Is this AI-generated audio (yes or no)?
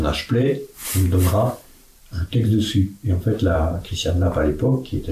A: yes